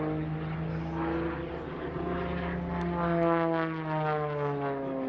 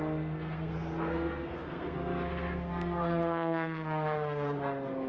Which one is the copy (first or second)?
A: second